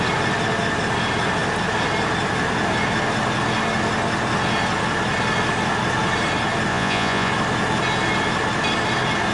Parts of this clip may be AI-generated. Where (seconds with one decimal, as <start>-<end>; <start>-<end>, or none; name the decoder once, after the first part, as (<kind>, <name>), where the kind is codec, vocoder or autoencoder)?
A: 6.7-7.3 (vocoder, Vocos)